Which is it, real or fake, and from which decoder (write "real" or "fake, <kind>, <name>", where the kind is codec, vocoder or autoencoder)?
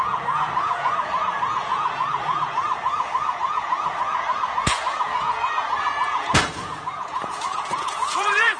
fake, vocoder, Vocos